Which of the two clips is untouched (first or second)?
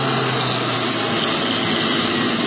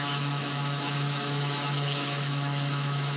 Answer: first